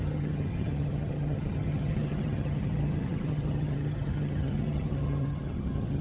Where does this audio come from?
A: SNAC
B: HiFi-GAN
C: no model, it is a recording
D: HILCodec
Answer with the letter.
B